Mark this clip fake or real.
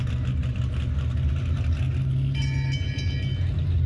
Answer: real